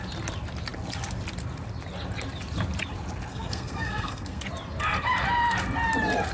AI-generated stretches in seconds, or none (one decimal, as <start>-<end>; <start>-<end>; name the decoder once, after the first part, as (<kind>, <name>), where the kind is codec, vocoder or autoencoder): 3.3-4.4 (codec, SNAC)